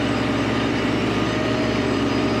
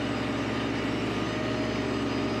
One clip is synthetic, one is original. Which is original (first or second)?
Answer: second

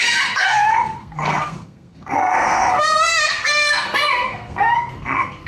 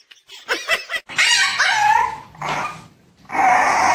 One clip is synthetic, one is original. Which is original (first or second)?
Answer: second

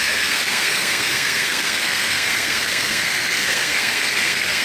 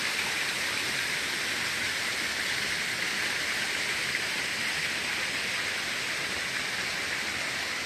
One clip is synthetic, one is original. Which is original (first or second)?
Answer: second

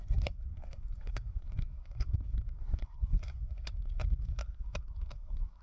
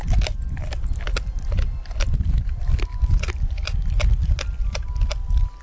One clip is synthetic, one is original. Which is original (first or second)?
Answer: second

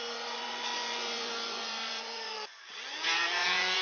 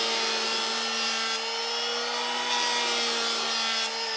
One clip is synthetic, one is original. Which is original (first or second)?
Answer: second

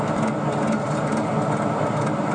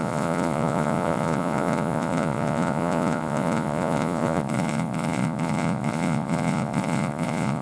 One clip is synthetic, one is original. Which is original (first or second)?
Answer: first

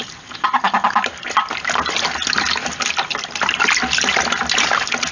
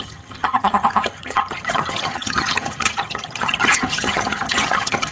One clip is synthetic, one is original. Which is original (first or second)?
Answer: first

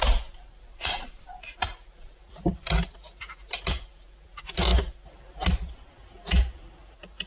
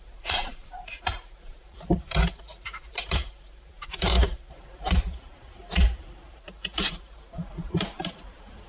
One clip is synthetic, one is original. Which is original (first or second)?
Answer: first